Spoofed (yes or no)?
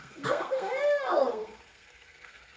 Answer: yes